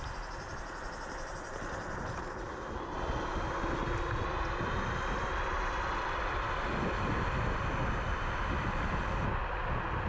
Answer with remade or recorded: recorded